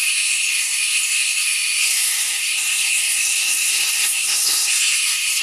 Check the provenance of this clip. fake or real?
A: fake